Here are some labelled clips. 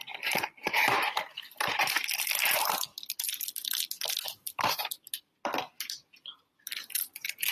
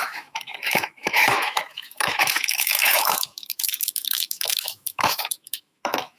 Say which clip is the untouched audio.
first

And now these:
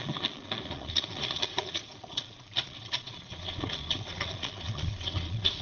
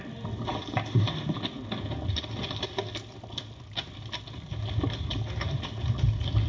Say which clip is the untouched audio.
second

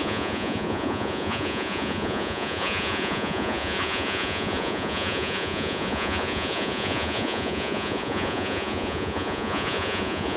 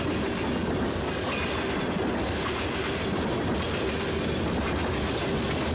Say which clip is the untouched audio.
second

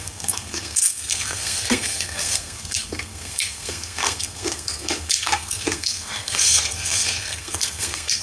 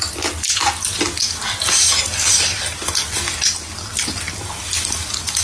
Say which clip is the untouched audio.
second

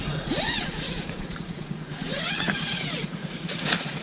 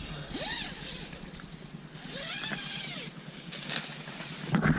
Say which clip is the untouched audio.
second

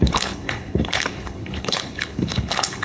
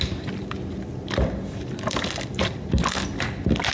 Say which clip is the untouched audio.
second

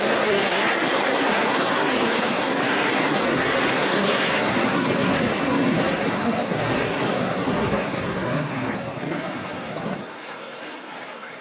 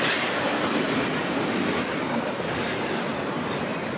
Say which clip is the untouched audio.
second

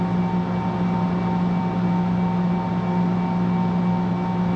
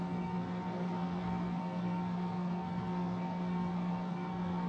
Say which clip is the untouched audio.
first